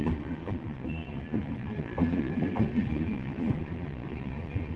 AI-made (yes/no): yes